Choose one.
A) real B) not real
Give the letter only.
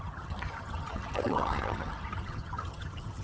B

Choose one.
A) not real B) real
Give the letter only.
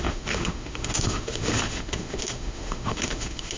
A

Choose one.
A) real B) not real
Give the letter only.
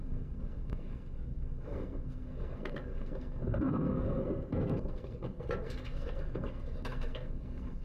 B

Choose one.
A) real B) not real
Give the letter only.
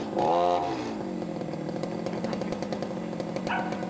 A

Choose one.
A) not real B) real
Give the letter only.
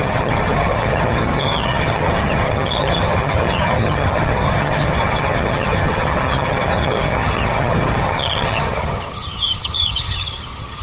A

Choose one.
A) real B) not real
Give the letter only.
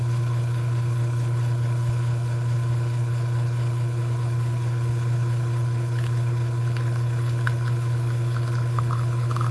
B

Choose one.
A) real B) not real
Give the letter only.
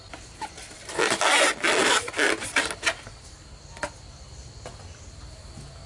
A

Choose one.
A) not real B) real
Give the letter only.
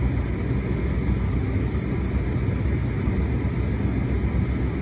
B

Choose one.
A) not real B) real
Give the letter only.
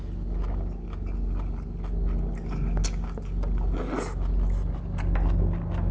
B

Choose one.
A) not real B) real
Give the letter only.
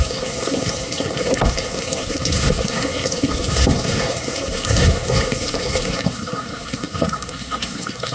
A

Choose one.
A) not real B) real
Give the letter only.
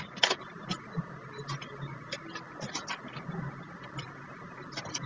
B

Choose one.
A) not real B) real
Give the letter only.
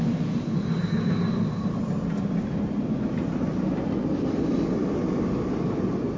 B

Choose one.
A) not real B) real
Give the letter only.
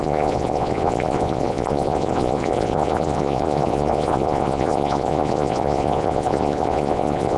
A